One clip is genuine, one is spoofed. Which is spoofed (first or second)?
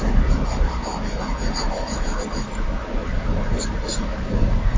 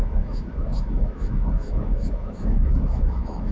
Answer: second